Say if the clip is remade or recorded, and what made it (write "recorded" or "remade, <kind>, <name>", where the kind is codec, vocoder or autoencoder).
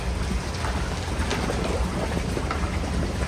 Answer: recorded